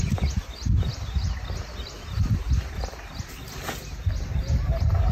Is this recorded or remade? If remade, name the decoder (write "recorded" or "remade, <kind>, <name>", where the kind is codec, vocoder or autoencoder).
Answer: recorded